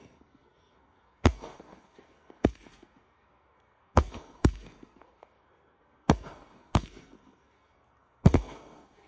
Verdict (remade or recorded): remade